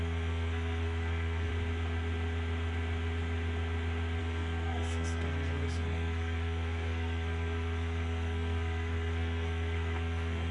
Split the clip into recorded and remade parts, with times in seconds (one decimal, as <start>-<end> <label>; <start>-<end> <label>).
0.0-1.5 remade; 1.5-4.2 recorded; 4.2-10.5 remade